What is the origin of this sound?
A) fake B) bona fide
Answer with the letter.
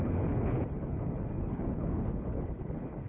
A